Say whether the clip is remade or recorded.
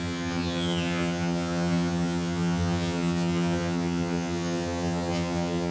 remade